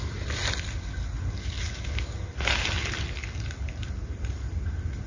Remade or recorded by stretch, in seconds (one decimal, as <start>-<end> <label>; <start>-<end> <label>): 0.0-5.1 recorded